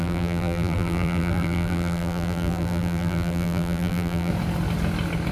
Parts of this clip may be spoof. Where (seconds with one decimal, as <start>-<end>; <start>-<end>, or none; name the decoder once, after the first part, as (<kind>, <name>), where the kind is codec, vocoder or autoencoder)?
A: 0.0-4.3 (vocoder, BigVGAN v2)